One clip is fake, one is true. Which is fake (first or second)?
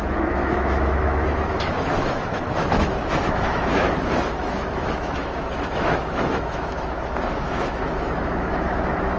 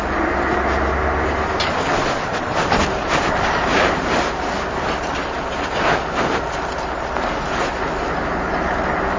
first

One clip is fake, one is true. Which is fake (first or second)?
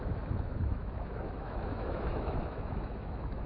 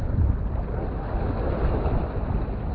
first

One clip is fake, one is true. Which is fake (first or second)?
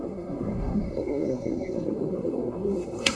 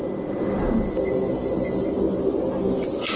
first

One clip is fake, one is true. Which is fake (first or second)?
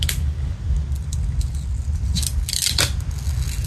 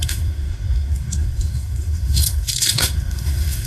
second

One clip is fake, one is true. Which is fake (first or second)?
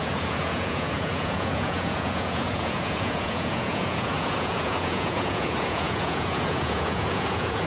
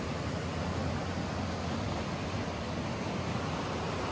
first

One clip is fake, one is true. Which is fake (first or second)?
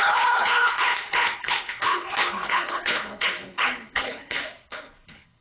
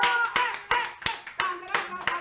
first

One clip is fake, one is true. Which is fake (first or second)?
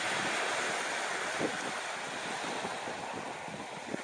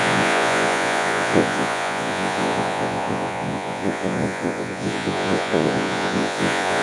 second